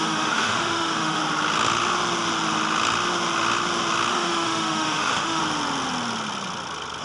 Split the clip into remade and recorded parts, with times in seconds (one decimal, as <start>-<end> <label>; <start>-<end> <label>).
0.0-1.2 remade; 1.2-4.1 recorded; 4.1-5.4 remade; 5.4-7.0 recorded